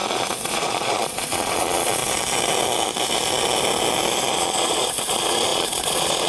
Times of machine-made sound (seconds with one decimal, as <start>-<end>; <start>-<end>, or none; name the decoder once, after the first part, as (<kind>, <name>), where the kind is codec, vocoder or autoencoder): 0.0-2.0 (vocoder, Vocos); 4.3-6.3